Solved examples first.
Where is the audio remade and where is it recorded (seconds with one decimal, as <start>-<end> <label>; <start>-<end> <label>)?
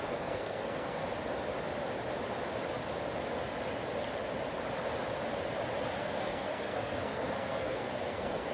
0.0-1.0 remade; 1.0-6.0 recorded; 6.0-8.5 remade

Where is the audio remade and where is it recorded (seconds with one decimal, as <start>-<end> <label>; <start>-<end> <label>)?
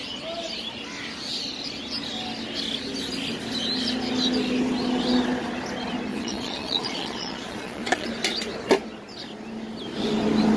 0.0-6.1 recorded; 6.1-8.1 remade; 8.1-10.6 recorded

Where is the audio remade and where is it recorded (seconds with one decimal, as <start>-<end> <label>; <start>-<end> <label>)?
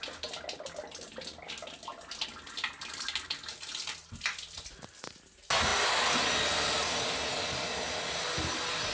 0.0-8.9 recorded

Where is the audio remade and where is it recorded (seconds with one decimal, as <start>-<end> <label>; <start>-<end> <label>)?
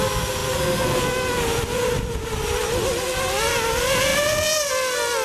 0.0-5.2 recorded